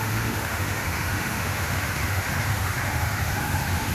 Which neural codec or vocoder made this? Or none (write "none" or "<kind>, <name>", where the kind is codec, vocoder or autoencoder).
autoencoder, DAC-VAE